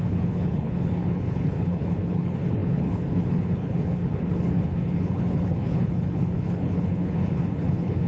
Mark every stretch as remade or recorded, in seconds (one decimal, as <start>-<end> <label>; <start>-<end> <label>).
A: 0.0-8.1 remade